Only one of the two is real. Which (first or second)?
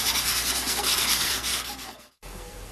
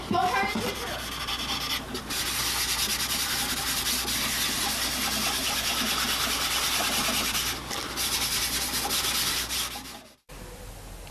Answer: second